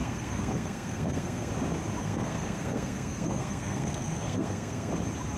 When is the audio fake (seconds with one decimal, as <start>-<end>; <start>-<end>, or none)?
0.0-1.5; 2.0-4.9